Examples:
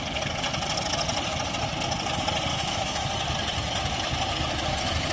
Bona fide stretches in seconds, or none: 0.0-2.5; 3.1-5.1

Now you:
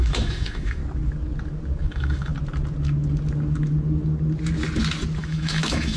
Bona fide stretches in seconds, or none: 0.8-1.8; 2.3-5.2

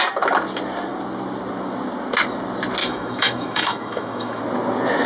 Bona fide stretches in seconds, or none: 0.0-2.8; 4.4-5.1

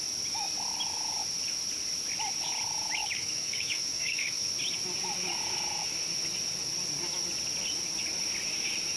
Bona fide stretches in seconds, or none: 0.0-3.0; 4.5-9.0